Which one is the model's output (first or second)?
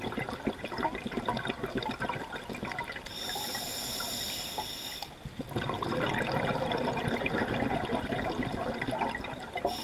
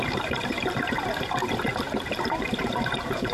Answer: second